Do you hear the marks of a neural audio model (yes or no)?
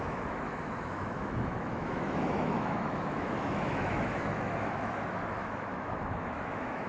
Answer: yes